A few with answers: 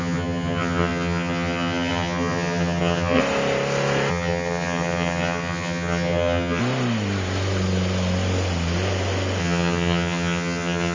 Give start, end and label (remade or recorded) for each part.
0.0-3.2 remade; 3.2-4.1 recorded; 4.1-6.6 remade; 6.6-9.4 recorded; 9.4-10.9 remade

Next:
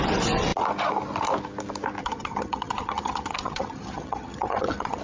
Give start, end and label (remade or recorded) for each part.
0.0-2.0 recorded; 2.0-5.0 remade